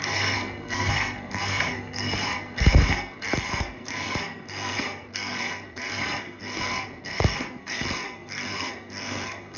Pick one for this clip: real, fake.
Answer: fake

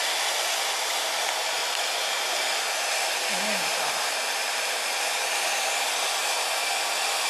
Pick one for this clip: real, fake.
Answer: real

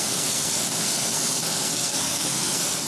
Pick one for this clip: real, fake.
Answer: fake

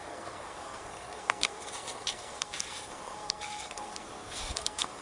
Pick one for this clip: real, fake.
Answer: fake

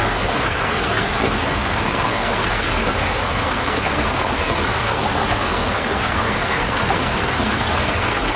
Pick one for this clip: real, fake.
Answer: fake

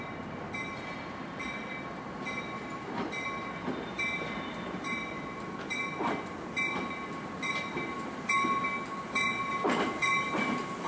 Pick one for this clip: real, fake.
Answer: real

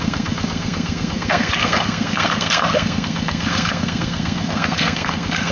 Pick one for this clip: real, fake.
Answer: fake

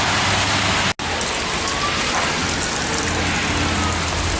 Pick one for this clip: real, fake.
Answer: real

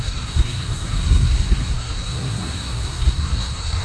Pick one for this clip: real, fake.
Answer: fake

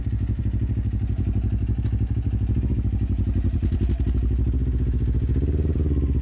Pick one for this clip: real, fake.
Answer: real